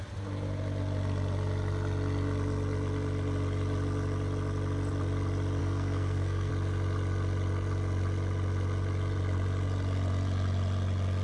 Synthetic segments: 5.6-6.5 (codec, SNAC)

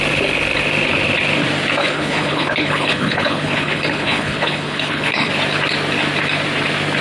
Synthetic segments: 1.8-5.3 (codec, HILCodec)

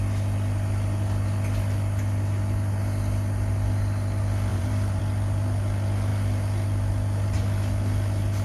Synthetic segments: 4.5-5.0 (vocoder, BigVGAN v2)